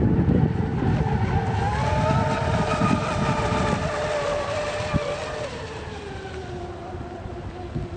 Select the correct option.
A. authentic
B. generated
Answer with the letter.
A